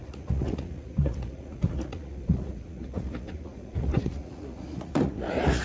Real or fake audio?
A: fake